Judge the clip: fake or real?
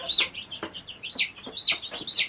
real